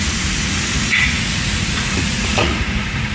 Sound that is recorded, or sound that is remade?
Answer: remade